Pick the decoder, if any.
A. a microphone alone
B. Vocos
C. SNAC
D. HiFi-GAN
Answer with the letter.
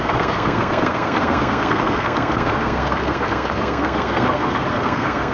C